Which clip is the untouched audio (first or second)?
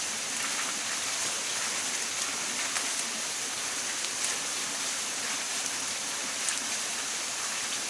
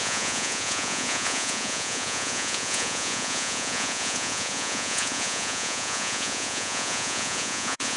first